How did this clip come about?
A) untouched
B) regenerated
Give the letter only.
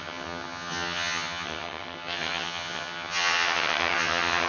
B